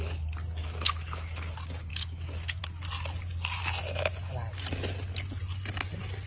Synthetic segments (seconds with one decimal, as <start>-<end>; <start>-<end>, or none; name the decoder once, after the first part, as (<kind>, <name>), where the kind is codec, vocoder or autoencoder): 0.6-1.5 (autoencoder, DAC-VAE); 1.9-2.6